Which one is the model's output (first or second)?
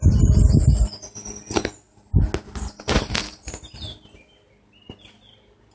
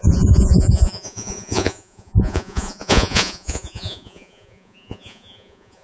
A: second